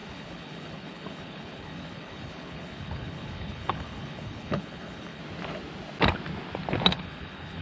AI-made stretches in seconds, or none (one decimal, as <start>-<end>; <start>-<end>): 0.0-5.2; 6.9-7.6